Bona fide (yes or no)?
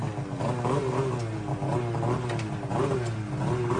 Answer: yes